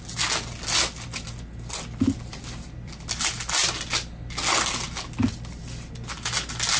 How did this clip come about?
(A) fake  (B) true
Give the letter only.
B